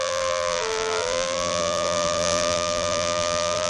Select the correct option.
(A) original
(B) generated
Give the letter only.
B